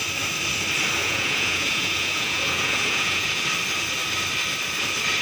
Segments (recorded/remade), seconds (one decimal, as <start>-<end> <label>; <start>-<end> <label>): 0.0-1.0 recorded; 1.0-3.4 remade; 3.4-5.2 recorded